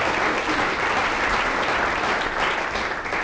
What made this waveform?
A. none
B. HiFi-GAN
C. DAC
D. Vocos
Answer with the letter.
A